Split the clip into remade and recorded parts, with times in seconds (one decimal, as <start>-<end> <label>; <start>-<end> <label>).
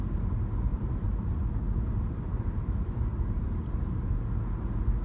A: 0.0-0.7 recorded; 0.7-1.4 remade; 1.4-2.3 recorded; 2.3-3.0 remade; 3.0-5.0 recorded